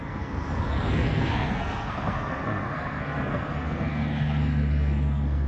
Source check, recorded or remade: remade